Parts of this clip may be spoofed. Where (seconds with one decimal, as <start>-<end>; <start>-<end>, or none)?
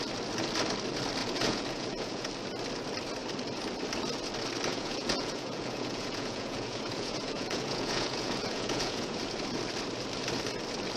1.2-2.3; 4.7-9.2